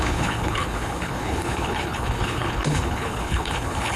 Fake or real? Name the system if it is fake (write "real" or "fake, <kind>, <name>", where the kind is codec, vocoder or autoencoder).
fake, codec, HILCodec